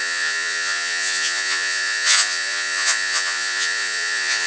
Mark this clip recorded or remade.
remade